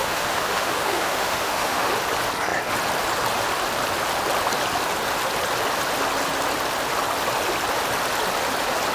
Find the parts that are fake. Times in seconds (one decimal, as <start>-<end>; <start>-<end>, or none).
0.0-1.9